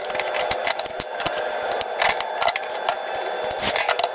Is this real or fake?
real